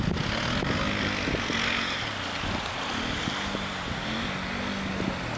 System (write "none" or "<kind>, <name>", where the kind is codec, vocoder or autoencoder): none